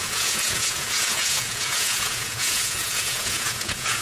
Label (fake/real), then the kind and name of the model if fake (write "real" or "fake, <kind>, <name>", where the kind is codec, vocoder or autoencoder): fake, vocoder, Vocos